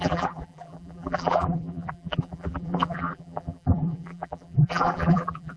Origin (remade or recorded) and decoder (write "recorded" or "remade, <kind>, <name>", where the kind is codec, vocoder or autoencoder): remade, vocoder, BigVGAN v2